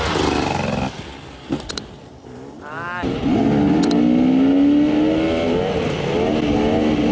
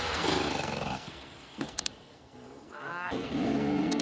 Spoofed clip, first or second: second